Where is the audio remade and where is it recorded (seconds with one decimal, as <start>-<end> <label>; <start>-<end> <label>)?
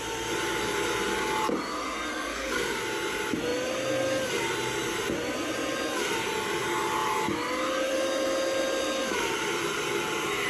0.0-2.1 recorded; 2.1-2.8 remade; 2.8-10.5 recorded